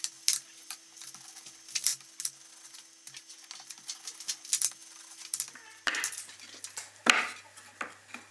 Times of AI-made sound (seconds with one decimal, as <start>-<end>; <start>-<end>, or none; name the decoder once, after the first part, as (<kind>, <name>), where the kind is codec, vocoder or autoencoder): none